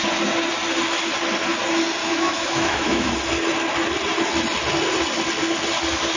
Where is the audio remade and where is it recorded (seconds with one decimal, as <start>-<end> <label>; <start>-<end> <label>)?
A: 0.0-2.0 recorded; 2.0-3.1 remade; 3.1-6.2 recorded